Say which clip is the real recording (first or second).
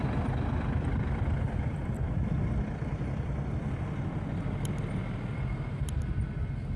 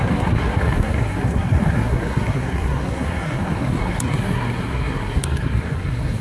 first